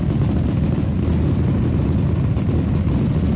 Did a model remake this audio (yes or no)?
no